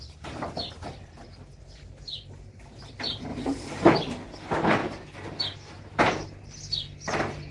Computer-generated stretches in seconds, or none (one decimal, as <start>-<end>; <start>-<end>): none